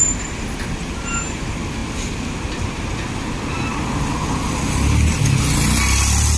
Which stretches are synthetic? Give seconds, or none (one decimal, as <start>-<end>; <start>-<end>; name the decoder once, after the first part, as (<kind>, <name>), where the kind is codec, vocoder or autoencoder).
none